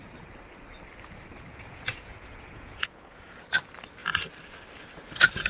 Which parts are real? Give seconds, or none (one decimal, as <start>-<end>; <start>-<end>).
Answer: 0.0-1.5; 3.4-5.5